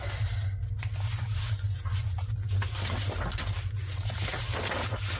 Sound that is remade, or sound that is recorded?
recorded